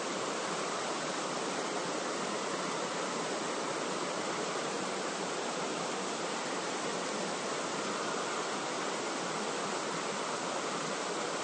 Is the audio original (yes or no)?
yes